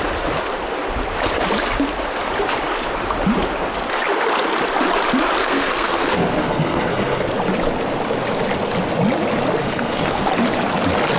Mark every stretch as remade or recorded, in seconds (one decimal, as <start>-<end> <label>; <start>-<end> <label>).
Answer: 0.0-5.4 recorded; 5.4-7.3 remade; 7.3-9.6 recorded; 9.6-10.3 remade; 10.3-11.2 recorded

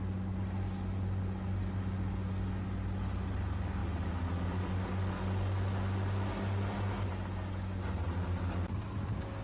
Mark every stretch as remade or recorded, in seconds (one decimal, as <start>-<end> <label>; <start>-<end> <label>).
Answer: 0.0-9.4 recorded

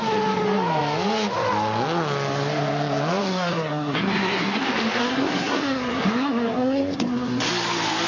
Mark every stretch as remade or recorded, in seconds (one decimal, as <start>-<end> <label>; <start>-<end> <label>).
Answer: 0.0-3.2 recorded; 3.2-4.6 remade; 4.6-5.0 recorded; 5.0-7.5 remade; 7.5-8.1 recorded